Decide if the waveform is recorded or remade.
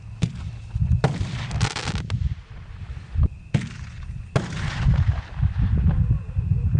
recorded